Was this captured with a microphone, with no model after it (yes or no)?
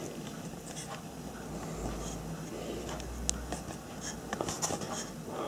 yes